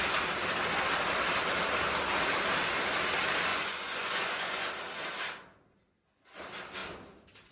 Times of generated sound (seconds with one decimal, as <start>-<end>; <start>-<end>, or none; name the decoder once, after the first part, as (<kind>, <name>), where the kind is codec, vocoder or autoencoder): 3.5-4.7 (vocoder, Vocos)